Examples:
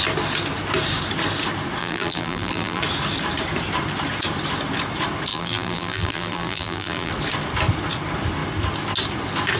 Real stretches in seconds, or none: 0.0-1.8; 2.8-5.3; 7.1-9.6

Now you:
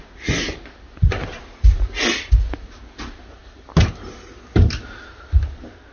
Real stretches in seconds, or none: 0.0-5.9

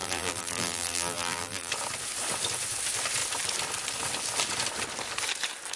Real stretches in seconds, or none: 1.7-5.8

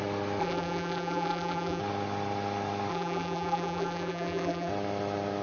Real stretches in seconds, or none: 0.0-0.4; 1.8-2.9; 4.7-5.4

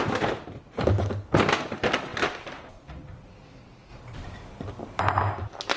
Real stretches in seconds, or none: 0.0-2.1; 2.7-3.9; 5.0-5.8

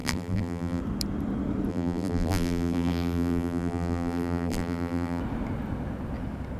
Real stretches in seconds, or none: 0.8-1.7; 5.2-6.6

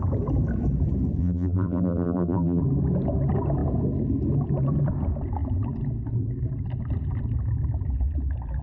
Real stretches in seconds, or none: 0.0-1.2; 2.6-8.6